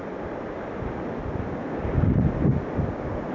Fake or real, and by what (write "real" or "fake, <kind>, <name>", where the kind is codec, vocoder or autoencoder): real